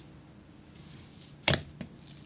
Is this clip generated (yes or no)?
no